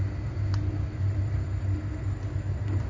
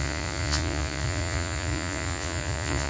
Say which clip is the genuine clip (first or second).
first